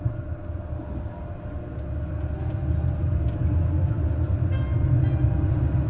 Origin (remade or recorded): recorded